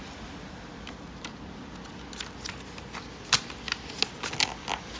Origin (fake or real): real